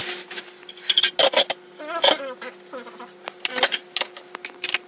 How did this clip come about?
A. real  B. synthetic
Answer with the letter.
A